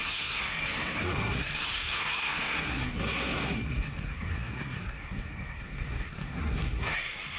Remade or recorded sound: remade